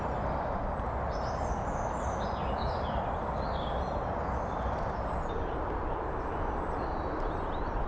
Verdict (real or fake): real